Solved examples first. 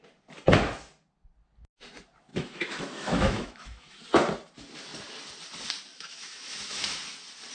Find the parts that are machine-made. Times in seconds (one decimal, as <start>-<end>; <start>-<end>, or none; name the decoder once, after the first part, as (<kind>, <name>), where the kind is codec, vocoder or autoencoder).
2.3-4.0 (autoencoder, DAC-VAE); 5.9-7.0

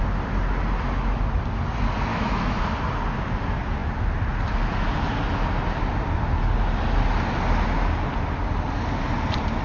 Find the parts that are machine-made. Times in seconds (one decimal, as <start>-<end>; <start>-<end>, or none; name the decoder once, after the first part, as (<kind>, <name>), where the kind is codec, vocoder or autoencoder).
2.1-2.6 (autoencoder, DAC-VAE)

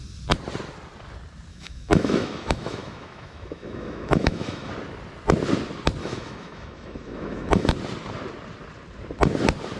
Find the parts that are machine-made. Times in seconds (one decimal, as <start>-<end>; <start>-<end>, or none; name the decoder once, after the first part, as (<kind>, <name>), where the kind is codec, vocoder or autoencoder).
1.5-4.7 (autoencoder, DAC-VAE); 6.0-7.7